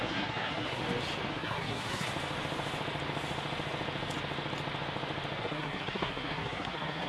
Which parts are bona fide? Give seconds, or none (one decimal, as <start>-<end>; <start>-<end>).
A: 0.8-1.3; 2.1-5.4